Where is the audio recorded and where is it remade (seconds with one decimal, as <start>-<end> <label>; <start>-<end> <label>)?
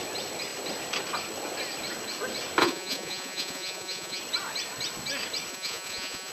0.0-2.6 recorded; 2.6-4.2 remade; 4.2-5.5 recorded; 5.5-6.3 remade